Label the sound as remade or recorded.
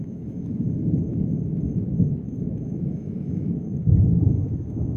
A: remade